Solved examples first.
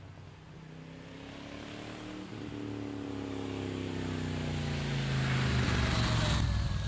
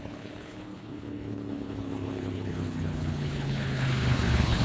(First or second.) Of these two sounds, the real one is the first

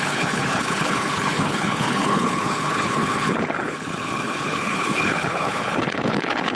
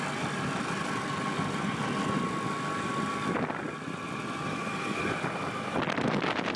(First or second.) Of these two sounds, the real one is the second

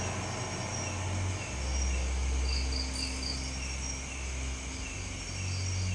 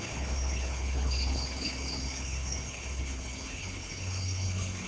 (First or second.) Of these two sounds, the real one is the first